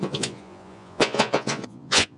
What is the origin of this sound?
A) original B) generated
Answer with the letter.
B